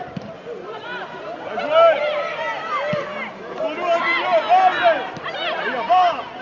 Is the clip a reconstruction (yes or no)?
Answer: no